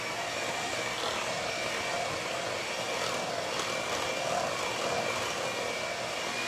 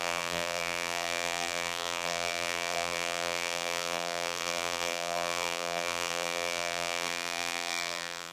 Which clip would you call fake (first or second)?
second